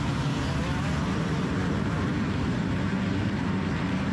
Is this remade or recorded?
remade